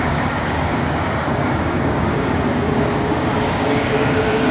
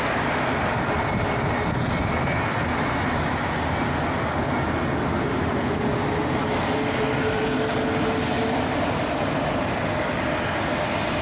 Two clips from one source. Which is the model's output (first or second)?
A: first